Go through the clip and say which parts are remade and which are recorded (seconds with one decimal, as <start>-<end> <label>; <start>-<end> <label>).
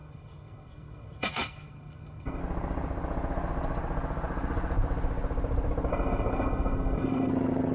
0.0-2.4 remade; 2.4-5.9 recorded; 5.9-7.3 remade; 7.3-7.7 recorded